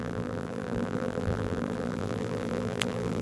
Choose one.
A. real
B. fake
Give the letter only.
B